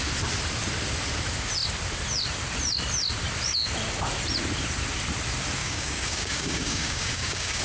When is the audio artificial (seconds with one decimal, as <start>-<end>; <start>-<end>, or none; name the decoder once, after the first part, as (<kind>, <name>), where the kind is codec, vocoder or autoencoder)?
5.6-7.6 (codec, DAC)